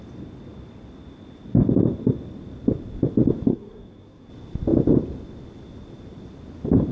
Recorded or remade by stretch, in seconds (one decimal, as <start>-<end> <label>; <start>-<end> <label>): 0.0-3.5 recorded; 3.5-4.3 remade; 4.3-6.9 recorded